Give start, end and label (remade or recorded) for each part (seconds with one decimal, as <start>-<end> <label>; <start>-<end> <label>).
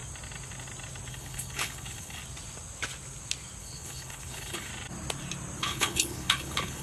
0.0-1.1 recorded; 1.1-2.2 remade; 2.2-3.6 recorded; 3.6-4.7 remade; 4.7-5.6 recorded; 5.6-6.8 remade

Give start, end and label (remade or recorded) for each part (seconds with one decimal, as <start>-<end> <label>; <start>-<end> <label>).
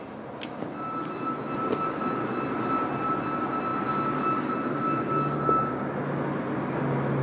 0.0-7.2 recorded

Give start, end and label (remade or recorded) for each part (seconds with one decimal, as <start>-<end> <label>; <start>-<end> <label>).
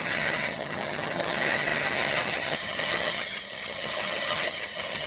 0.0-5.1 remade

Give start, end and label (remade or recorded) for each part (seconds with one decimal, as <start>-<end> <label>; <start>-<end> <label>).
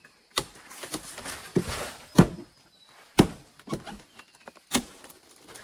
0.0-5.6 recorded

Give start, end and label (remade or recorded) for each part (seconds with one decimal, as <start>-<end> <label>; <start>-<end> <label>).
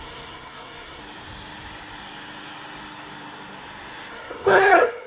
0.0-1.0 remade; 1.0-4.1 recorded; 4.1-5.1 remade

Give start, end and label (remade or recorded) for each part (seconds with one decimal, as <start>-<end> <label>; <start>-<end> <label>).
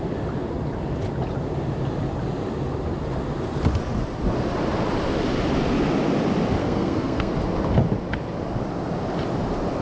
0.0-6.6 recorded; 6.6-7.3 remade; 7.3-9.8 recorded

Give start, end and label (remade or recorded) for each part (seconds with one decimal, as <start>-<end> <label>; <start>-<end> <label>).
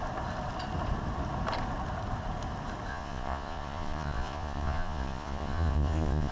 0.0-2.9 recorded; 2.9-6.3 remade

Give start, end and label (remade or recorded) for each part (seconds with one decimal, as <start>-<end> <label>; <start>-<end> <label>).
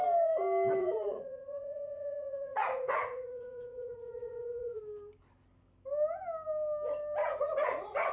0.0-0.8 recorded; 0.8-4.8 remade; 4.8-7.2 recorded; 7.2-8.1 remade